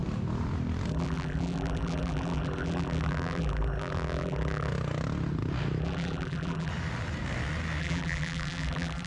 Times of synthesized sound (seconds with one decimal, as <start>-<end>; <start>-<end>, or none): 0.9-4.7; 5.8-6.7; 7.8-9.1